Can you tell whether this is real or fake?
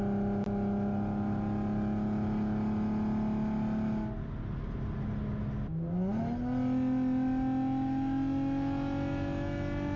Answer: real